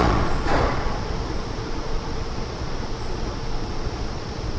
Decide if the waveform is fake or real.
fake